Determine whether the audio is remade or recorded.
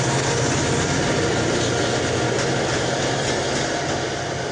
recorded